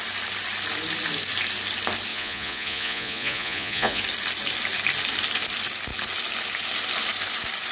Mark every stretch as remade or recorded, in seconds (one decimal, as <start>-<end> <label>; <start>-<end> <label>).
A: 0.0-2.1 recorded; 2.1-4.0 remade; 4.0-7.7 recorded